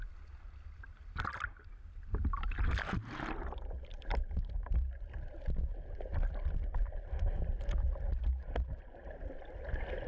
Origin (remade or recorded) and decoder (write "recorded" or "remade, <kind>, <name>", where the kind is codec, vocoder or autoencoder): recorded